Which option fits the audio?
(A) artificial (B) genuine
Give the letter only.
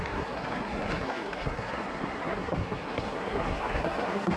A